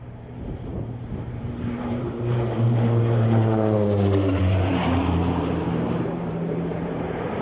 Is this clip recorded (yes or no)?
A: no